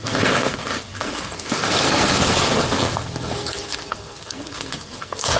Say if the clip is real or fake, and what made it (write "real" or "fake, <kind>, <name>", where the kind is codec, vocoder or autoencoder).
fake, codec, SNAC